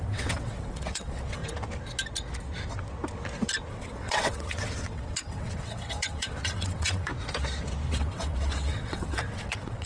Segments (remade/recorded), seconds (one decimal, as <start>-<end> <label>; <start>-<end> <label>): 0.0-1.4 remade; 1.4-3.7 recorded; 3.7-7.1 remade; 7.1-7.9 recorded; 7.9-9.9 remade